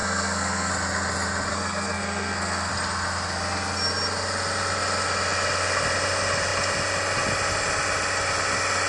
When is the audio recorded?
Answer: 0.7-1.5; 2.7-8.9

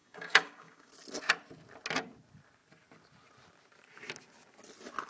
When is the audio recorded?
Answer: 0.9-5.1